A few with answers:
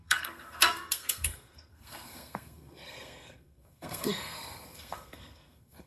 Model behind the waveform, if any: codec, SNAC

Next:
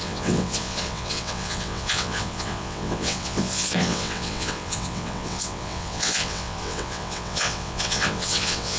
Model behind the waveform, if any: vocoder, WaveNeXt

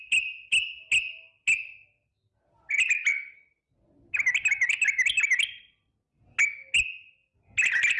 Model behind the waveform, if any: none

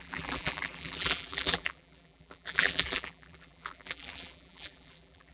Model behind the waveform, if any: vocoder, BigVGAN v2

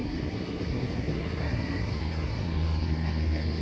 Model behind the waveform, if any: codec, SNAC